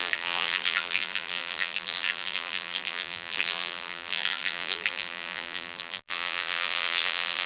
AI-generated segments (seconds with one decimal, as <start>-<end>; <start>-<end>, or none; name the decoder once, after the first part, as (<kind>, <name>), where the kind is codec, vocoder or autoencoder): 0.0-7.5 (vocoder, BigVGAN v2)